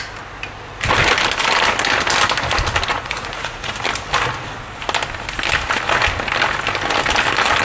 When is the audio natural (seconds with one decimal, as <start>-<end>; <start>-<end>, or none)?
0.0-2.9; 3.7-7.6